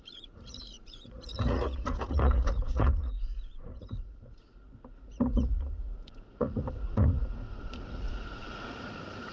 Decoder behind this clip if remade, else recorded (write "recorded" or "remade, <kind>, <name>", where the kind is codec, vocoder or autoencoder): remade, vocoder, Vocos